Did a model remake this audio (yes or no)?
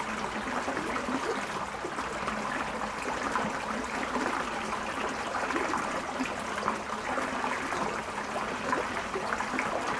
no